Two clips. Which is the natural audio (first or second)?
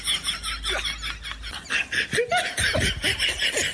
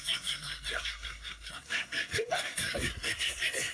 first